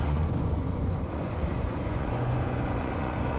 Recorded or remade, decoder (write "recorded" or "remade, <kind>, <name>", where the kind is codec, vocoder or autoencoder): remade, vocoder, Vocos